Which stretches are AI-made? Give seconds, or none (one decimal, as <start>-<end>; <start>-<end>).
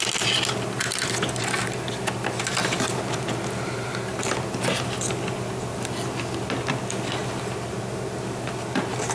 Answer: none